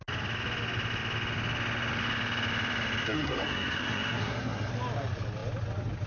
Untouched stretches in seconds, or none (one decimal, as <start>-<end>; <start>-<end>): 0.0-3.0; 4.7-6.1